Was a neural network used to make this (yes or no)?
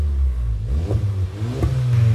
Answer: no